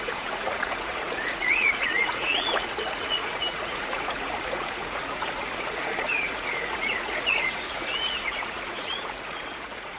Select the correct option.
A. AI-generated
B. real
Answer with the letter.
A